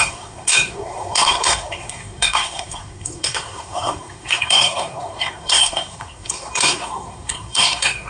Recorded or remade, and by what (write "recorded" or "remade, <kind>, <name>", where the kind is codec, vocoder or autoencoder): remade, codec, SNAC